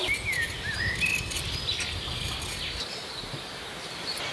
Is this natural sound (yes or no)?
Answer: yes